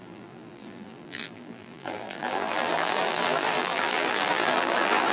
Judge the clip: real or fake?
fake